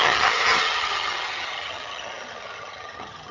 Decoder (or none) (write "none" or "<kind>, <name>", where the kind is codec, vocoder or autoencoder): vocoder, HiFi-GAN